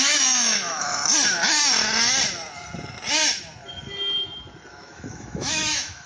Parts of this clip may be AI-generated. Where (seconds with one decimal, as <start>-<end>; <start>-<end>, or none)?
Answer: 0.0-1.0; 4.7-6.1